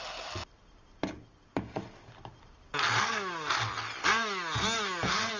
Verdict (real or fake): real